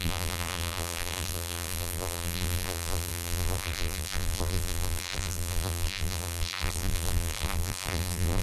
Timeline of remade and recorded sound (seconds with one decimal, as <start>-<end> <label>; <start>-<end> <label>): 0.0-8.4 remade